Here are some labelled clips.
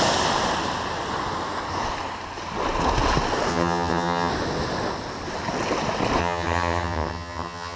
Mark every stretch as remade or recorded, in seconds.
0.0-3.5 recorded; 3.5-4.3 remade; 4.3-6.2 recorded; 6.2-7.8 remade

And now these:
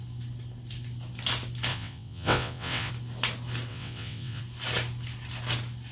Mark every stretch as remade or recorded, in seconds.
0.0-1.7 recorded; 1.7-2.9 remade; 2.9-3.7 recorded; 3.7-4.4 remade; 4.4-5.9 recorded

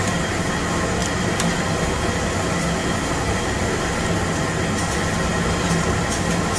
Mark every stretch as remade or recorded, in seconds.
0.0-6.6 recorded